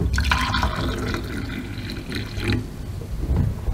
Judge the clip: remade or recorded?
recorded